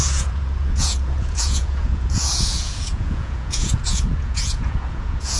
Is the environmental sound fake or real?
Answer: fake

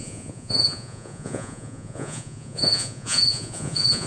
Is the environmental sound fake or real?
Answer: fake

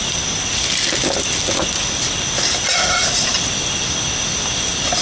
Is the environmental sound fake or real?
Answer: real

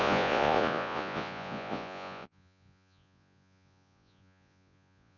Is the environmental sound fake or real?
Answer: fake